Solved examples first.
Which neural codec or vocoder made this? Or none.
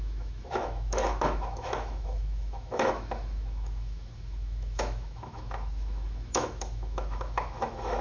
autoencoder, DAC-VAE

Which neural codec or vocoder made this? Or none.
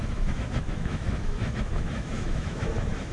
autoencoder, DAC-VAE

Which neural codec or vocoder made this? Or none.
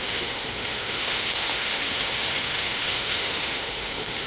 autoencoder, DAC-VAE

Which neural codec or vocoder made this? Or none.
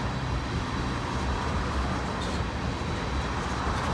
none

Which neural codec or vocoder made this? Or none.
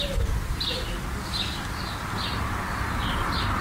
none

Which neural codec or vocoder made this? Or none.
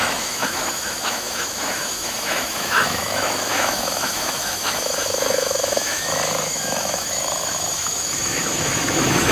autoencoder, DAC-VAE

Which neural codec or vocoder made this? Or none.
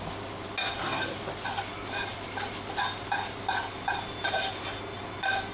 none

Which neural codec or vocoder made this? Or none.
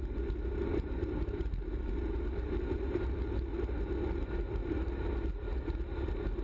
none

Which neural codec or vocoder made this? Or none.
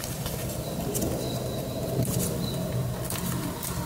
none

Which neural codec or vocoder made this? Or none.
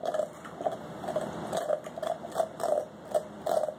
none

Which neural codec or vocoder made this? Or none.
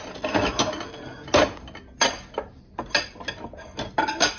none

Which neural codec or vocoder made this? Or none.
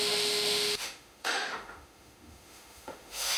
autoencoder, DAC-VAE